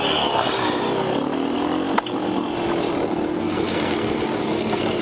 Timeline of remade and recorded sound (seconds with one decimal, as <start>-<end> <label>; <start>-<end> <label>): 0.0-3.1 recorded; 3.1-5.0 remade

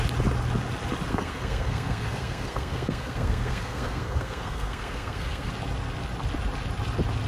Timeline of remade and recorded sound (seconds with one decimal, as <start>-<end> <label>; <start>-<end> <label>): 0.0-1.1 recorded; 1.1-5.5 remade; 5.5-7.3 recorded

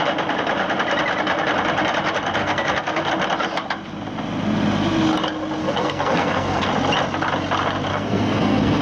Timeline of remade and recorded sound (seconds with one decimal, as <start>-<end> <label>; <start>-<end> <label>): 0.0-2.4 recorded; 2.4-3.1 remade; 3.1-5.6 recorded; 5.6-6.7 remade; 6.7-7.9 recorded; 7.9-8.8 remade